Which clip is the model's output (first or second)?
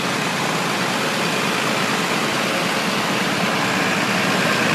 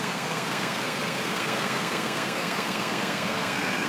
second